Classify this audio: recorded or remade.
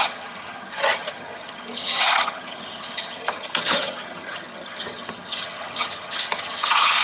remade